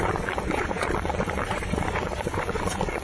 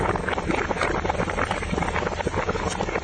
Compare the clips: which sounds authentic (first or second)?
second